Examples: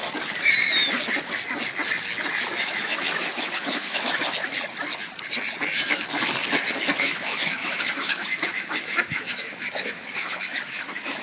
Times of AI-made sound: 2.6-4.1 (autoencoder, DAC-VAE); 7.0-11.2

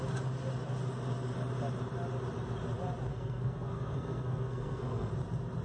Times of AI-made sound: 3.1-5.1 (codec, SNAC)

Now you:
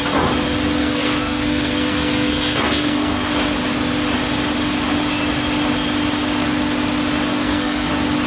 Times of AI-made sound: 0.8-3.3 (codec, SNAC); 7.3-7.9

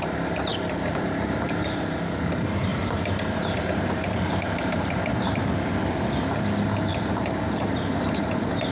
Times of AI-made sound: 0.0-5.1 (vocoder, BigVGAN v2); 6.9-8.7

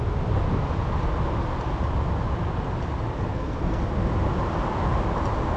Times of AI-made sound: 3.3-3.8 (codec, SNAC)

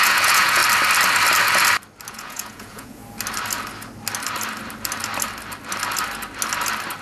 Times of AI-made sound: 0.0-0.6 (vocoder, Vocos); 2.1-3.0

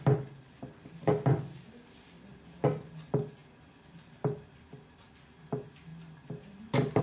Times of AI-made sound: none

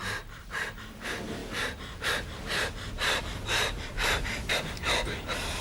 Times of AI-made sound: none